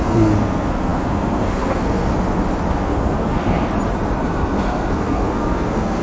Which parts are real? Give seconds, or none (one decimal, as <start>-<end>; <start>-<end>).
2.1-2.7; 3.7-4.2